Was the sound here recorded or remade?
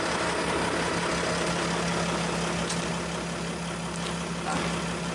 recorded